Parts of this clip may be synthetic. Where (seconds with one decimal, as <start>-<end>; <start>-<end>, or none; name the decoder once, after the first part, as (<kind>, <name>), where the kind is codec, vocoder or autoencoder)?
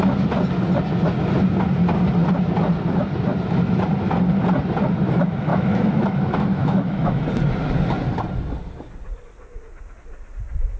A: 5.5-7.2 (autoencoder, DAC-VAE)